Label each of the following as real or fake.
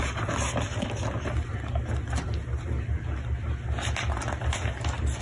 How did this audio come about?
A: real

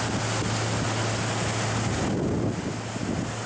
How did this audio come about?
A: real